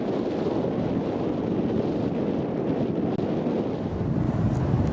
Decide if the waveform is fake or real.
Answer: real